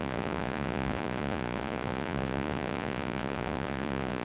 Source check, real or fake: fake